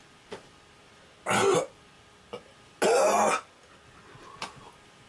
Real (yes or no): yes